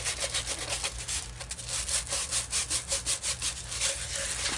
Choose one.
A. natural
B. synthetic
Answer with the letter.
A